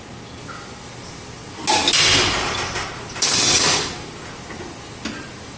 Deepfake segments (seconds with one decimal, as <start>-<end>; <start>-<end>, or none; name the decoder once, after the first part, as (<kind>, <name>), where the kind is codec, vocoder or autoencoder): none